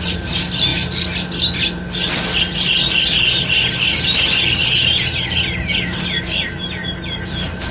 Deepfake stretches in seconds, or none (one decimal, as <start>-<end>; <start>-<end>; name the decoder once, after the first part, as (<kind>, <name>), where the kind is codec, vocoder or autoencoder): none